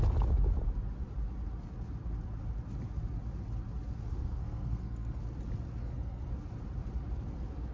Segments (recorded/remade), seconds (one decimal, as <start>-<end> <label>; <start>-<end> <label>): 0.0-4.1 recorded; 4.1-5.2 remade; 5.2-5.8 recorded; 5.8-6.3 remade; 6.3-7.7 recorded